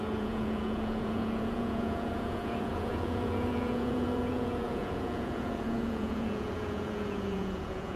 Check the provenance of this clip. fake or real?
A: fake